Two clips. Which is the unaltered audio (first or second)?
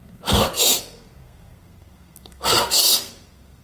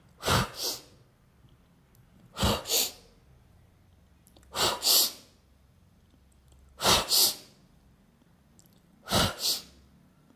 second